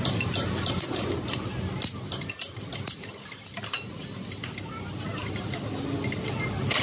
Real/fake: real